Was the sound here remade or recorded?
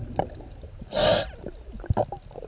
recorded